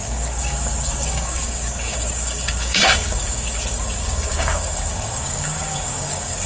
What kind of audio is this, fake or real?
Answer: fake